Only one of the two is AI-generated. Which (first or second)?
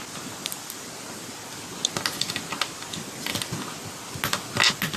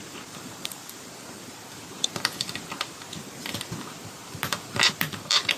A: second